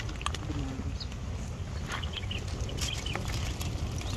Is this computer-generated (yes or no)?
no